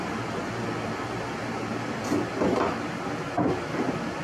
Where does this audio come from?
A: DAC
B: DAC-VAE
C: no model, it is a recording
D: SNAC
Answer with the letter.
C